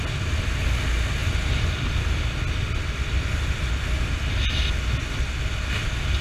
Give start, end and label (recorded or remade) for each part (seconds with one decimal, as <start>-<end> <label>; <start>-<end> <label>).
0.0-6.2 recorded

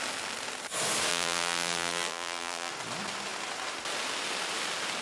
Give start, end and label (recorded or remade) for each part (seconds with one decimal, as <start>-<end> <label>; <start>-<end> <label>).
0.0-1.1 recorded; 1.1-2.7 remade; 2.7-5.0 recorded

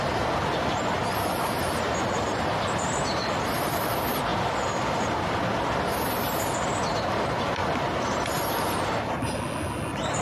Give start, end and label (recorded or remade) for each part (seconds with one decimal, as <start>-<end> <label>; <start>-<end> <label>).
0.0-10.2 recorded